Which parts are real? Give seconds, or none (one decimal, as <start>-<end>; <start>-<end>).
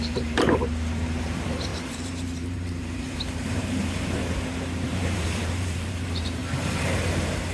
4.2-4.9; 6.4-7.1